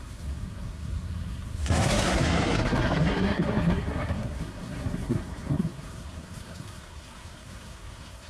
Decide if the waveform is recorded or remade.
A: remade